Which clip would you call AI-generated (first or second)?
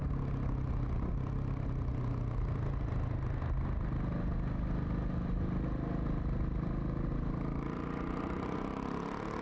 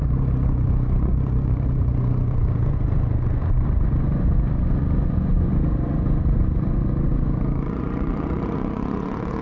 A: second